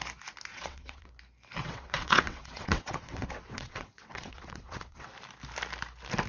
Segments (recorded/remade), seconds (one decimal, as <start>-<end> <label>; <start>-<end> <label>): 0.0-0.5 recorded; 0.5-1.1 remade; 1.1-1.6 recorded; 1.6-5.1 remade; 5.1-6.3 recorded